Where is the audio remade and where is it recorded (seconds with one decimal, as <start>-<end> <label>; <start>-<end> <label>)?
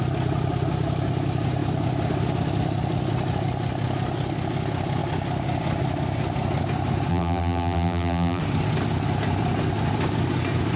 0.0-7.1 recorded; 7.1-8.4 remade; 8.4-10.8 recorded